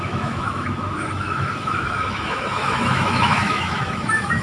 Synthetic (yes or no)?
yes